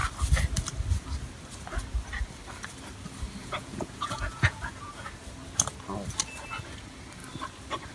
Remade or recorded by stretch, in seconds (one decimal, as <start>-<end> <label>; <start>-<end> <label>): 0.0-3.4 recorded; 3.4-5.1 remade; 5.1-7.9 recorded